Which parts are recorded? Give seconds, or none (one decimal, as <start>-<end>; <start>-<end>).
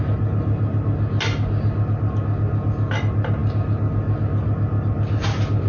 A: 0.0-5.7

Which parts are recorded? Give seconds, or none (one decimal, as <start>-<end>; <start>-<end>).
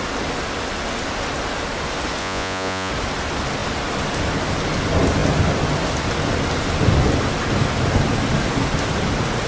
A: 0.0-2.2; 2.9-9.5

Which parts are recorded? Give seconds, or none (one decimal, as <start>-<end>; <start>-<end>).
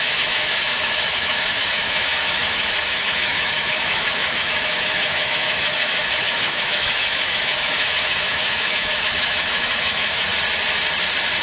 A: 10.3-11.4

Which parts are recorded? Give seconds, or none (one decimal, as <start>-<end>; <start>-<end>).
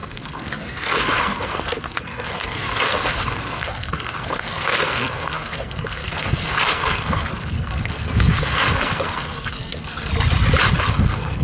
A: 10.1-10.8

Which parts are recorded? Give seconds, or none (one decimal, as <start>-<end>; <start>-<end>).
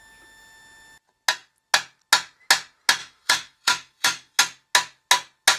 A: 0.0-3.0; 4.4-5.6